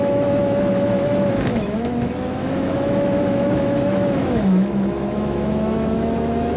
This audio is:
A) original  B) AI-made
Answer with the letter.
B